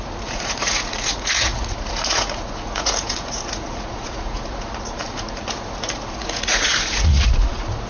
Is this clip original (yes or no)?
no